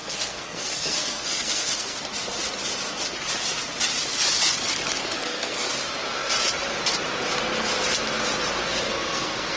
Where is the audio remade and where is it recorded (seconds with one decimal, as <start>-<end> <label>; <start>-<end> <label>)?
0.0-2.0 remade; 2.0-5.0 recorded; 5.0-5.7 remade; 5.7-8.9 recorded; 8.9-9.6 remade